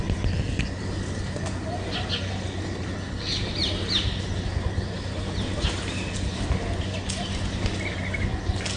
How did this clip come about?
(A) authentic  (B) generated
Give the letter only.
A